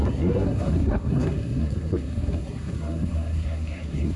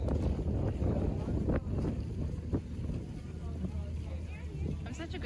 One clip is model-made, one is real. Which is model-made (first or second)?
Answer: first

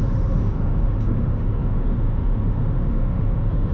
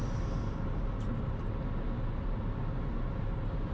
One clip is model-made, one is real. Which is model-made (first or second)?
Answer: first